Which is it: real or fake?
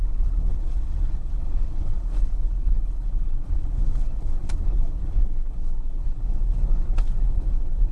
fake